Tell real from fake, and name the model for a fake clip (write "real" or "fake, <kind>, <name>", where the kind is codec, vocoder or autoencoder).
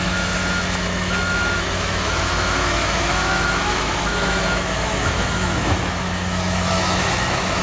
fake, autoencoder, DAC-VAE